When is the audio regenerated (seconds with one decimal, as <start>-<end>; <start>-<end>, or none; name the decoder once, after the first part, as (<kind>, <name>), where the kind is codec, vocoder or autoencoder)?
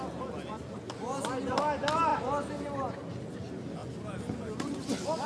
none